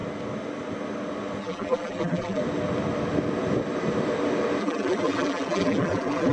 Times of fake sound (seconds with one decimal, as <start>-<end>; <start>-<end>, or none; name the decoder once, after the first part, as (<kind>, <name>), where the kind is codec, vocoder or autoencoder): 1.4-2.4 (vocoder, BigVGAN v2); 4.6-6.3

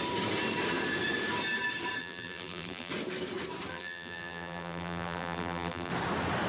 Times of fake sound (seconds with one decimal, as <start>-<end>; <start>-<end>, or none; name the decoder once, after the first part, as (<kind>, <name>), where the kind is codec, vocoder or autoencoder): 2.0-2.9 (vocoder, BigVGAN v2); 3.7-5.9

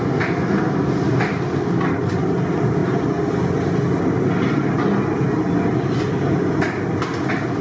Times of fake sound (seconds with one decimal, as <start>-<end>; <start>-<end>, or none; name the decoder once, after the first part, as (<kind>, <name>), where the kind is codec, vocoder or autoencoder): none